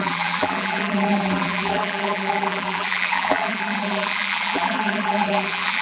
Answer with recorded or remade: remade